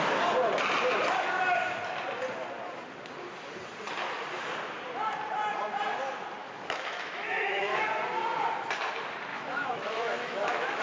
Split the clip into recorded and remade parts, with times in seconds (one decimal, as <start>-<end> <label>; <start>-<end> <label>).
0.0-6.4 recorded; 6.4-7.9 remade; 7.9-9.3 recorded; 9.3-10.8 remade